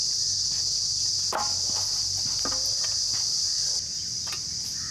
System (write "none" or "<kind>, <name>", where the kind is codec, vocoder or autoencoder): none